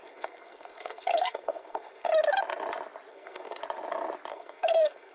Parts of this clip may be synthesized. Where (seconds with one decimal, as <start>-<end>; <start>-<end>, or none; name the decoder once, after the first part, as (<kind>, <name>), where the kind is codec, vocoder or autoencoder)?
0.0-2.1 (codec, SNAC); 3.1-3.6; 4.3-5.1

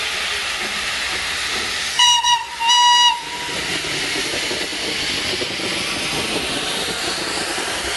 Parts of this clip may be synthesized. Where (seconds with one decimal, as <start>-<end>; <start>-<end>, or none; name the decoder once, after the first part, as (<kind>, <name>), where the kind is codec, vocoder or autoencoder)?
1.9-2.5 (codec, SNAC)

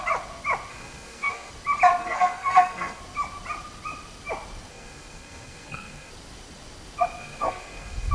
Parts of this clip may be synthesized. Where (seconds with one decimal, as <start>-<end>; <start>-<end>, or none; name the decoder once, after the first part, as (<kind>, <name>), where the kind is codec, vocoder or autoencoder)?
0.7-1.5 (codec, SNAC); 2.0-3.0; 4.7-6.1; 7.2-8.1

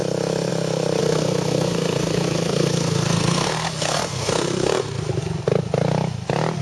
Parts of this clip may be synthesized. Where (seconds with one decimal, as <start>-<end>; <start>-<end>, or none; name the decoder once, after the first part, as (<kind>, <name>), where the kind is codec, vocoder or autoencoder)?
1.0-5.0 (codec, SNAC)

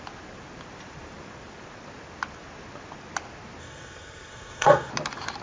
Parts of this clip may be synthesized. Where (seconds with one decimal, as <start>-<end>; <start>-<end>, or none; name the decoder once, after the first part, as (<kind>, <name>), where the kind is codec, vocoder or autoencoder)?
3.6-4.9 (codec, SNAC)